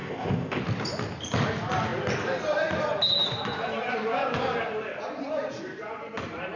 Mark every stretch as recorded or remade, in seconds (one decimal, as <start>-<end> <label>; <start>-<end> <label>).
0.0-0.6 remade; 0.6-6.6 recorded